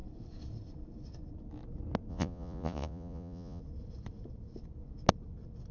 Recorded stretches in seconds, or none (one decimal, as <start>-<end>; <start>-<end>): 0.0-2.1; 3.6-5.7

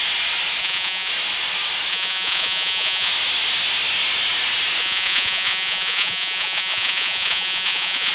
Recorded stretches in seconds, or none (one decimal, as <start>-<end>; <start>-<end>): 0.0-0.6; 1.1-1.9; 3.1-4.8

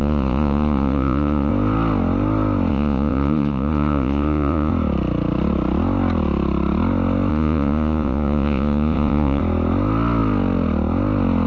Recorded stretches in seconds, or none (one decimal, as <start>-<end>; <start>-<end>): 1.5-2.7; 4.7-7.3; 9.4-11.5